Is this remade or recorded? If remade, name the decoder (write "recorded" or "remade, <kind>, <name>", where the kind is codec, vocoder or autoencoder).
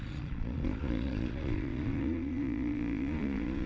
remade, vocoder, Vocos